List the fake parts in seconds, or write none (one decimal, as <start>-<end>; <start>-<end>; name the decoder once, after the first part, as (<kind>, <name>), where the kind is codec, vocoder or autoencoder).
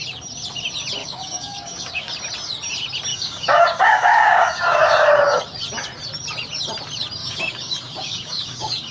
1.0-2.1 (codec, DAC); 3.1-5.4; 7.2-8.9